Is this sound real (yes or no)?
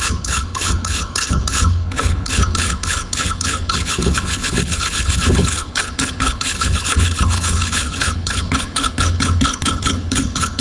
no